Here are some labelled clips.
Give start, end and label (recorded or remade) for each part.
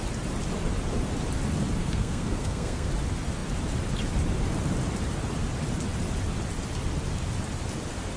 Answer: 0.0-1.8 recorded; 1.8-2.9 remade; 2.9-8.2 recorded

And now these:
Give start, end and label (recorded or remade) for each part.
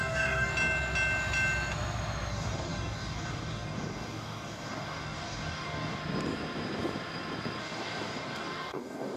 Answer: 0.0-0.5 remade; 0.5-2.3 recorded; 2.3-6.0 remade; 6.0-7.6 recorded; 7.6-9.2 remade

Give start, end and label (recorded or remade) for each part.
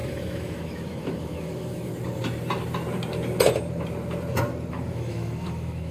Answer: 0.0-1.9 remade; 1.9-4.7 recorded; 4.7-5.9 remade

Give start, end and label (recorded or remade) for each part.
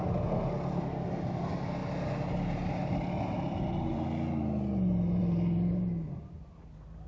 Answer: 0.0-7.1 recorded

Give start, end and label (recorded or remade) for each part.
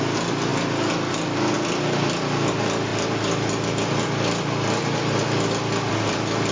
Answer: 0.0-6.5 recorded